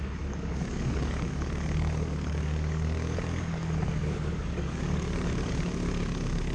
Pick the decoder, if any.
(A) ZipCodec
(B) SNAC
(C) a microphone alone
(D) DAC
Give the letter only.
D